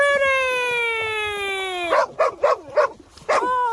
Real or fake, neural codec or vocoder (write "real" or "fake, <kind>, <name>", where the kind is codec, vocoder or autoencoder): real